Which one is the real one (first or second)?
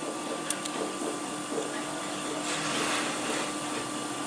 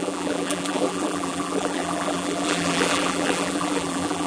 first